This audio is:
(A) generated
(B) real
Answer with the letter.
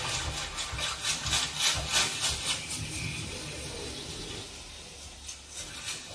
B